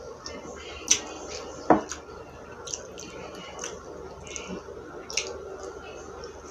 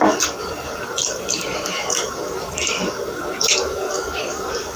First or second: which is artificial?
second